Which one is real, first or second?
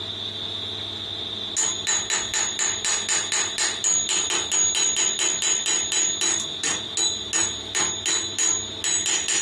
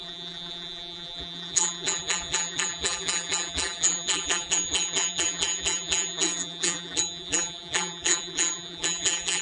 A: first